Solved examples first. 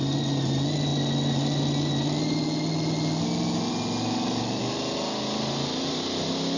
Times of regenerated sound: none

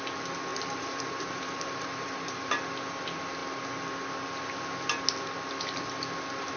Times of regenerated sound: 0.5-2.5 (vocoder, BigVGAN v2)

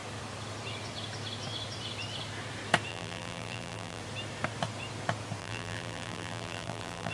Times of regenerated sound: 2.9-4.0 (vocoder, BigVGAN v2); 5.4-7.1

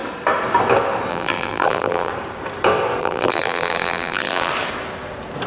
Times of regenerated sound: 1.1-2.1 (vocoder, BigVGAN v2); 3.0-4.5

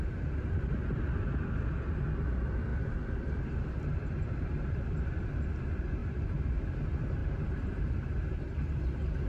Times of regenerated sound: 2.7-5.2 (vocoder, BigVGAN v2); 6.0-6.6; 7.2-9.3